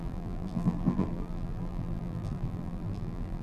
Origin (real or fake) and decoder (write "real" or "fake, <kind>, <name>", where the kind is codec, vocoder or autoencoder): fake, vocoder, BigVGAN v2